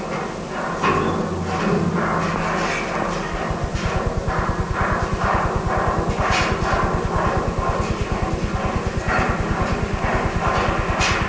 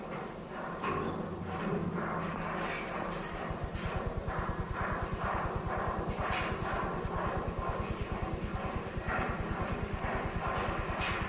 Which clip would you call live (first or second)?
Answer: first